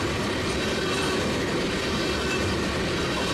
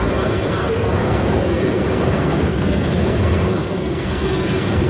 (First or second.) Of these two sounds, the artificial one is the second